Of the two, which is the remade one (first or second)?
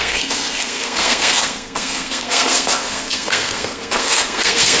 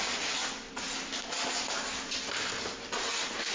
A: first